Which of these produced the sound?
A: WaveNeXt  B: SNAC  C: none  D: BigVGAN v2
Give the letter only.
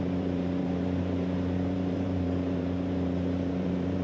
D